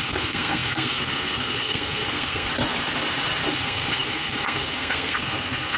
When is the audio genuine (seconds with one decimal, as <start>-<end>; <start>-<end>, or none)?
2.5-3.5